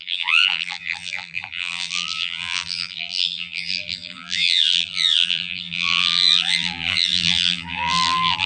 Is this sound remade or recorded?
remade